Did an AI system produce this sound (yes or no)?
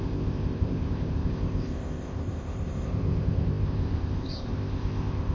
yes